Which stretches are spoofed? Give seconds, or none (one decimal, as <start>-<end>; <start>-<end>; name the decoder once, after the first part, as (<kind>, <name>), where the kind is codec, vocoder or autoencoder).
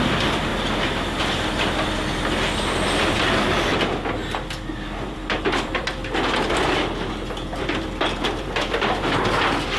0.0-0.5 (vocoder, BigVGAN v2); 3.2-3.7; 4.7-6.0; 7.6-9.8